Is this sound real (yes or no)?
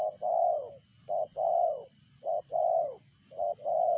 yes